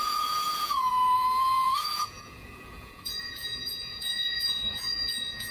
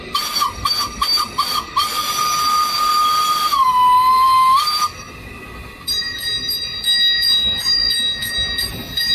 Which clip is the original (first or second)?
second